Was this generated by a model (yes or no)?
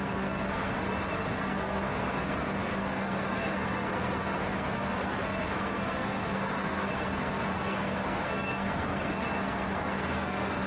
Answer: yes